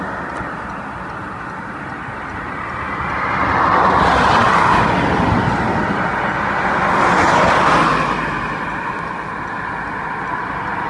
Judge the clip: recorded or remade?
recorded